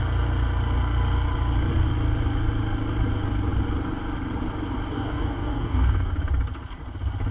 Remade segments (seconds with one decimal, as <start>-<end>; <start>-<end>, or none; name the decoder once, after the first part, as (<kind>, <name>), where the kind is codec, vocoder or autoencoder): 4.9-6.1 (codec, DAC)